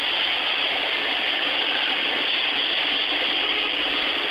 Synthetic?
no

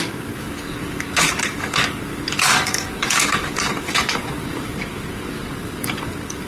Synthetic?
yes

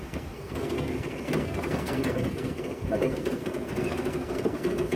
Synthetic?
yes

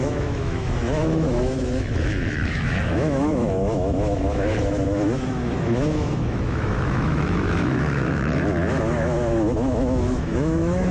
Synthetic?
yes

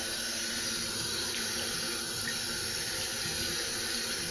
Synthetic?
no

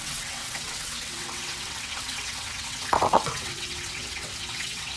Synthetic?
yes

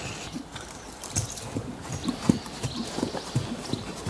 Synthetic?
yes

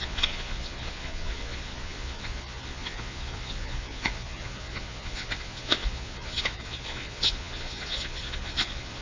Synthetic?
yes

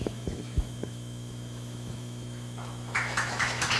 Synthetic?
yes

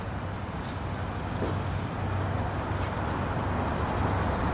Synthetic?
no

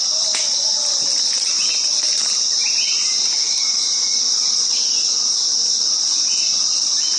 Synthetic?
no